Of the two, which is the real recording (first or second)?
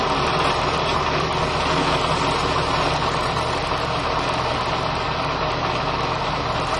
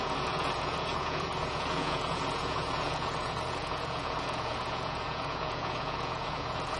first